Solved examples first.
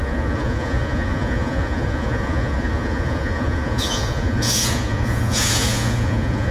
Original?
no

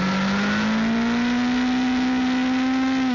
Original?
yes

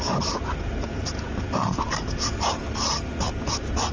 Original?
yes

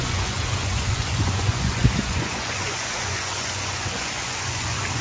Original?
no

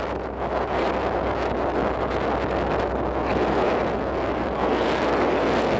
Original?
yes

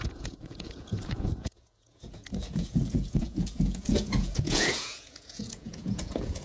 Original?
no